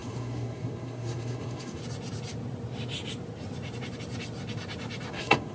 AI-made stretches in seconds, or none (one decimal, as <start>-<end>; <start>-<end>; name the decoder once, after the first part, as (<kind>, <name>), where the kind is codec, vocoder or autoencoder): 0.0-1.8 (codec, SNAC); 5.1-5.5